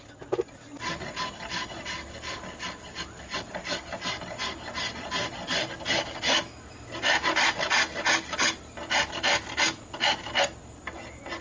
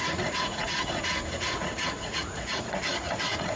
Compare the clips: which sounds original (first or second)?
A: first